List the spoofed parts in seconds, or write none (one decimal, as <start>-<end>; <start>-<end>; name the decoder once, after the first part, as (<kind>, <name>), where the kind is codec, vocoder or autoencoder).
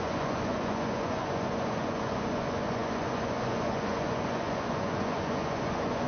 0.0-6.1 (vocoder, Vocos)